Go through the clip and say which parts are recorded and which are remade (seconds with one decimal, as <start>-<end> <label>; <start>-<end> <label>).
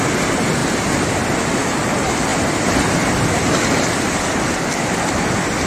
0.0-0.6 recorded; 0.6-1.1 remade; 1.1-2.3 recorded; 2.3-2.8 remade; 2.8-5.7 recorded